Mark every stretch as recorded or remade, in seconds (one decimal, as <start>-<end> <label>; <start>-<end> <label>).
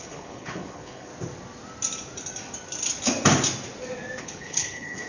0.0-1.1 remade; 1.1-4.2 recorded; 4.2-5.1 remade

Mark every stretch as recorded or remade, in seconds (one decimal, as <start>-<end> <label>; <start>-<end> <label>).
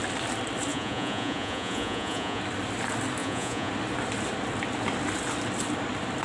0.0-0.7 recorded; 0.7-2.4 remade; 2.4-3.2 recorded; 3.2-3.7 remade; 3.7-6.2 recorded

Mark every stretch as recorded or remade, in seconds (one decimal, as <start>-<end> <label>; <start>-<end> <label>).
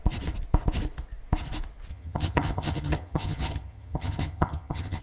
0.0-1.9 recorded; 1.9-5.0 remade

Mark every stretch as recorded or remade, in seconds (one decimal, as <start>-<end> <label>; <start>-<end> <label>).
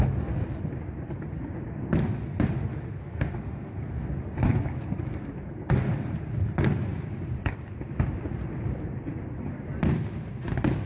0.0-3.0 recorded; 3.0-3.8 remade; 3.8-10.9 recorded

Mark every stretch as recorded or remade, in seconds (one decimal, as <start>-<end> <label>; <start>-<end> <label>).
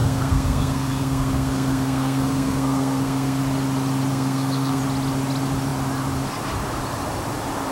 0.0-3.4 remade; 3.4-4.1 recorded; 4.1-4.8 remade; 4.8-7.7 recorded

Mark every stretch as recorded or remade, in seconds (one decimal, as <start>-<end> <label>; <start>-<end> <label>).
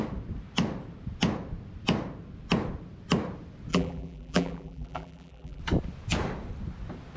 0.0-3.7 recorded; 3.7-5.6 remade; 5.6-7.2 recorded